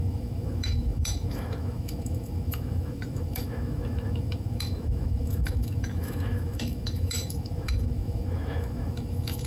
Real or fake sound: fake